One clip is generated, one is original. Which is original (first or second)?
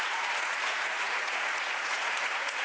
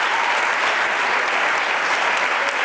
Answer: second